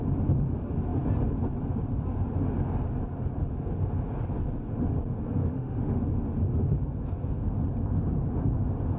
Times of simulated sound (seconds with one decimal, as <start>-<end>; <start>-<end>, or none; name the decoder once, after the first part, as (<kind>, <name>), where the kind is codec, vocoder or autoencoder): 5.4-6.0 (autoencoder, DAC-VAE)